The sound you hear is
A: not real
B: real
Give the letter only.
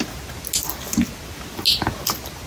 B